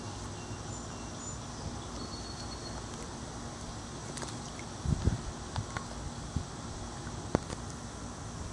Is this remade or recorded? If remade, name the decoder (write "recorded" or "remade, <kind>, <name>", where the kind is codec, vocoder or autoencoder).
recorded